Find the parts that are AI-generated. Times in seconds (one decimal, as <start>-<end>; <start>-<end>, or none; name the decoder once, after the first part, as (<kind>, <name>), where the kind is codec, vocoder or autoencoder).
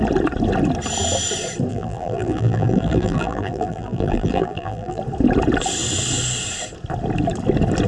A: 1.7-5.0 (vocoder, BigVGAN v2)